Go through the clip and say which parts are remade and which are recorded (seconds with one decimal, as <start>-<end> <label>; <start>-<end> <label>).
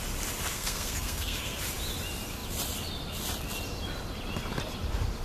0.0-0.5 recorded; 0.5-1.6 remade; 1.6-5.2 recorded